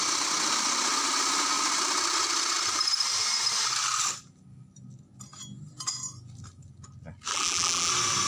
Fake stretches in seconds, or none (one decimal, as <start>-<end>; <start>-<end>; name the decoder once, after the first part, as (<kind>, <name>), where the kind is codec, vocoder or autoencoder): 7.3-7.9 (vocoder, BigVGAN v2)